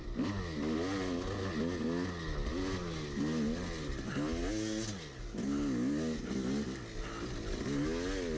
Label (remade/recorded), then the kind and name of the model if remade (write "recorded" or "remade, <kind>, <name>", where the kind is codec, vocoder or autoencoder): recorded